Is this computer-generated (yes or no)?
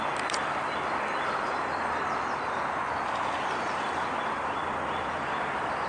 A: yes